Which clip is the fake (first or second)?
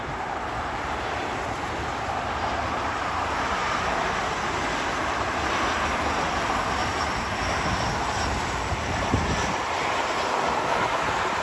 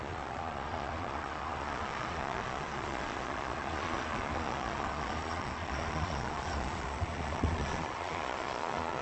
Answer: second